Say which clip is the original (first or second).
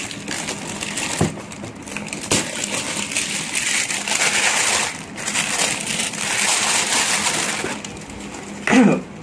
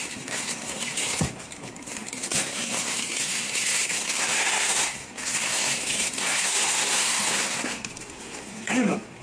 first